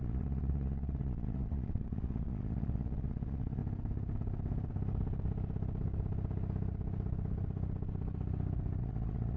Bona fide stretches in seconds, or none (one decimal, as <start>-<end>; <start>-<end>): 3.6-8.8